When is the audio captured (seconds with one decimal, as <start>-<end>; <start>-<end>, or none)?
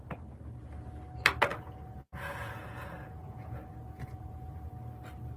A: 0.0-1.5; 4.7-5.4